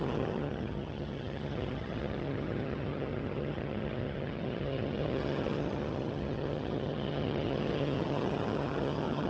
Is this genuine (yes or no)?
no